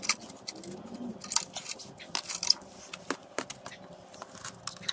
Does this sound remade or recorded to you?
recorded